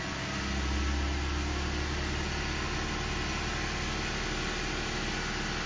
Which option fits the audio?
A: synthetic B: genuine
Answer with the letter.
B